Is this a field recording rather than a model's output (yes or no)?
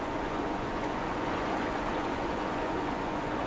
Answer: no